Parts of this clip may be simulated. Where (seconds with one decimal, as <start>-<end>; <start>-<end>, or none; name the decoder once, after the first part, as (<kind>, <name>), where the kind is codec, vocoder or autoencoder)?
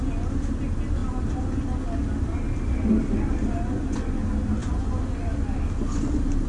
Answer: none